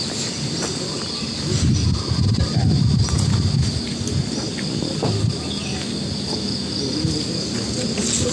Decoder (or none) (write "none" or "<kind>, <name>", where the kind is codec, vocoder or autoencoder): none